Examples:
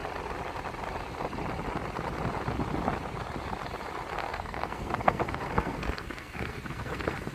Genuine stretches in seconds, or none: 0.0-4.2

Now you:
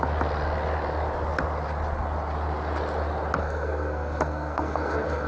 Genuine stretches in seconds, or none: 0.0-3.4

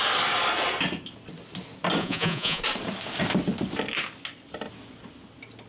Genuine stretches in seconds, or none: 0.0-2.0; 2.6-5.7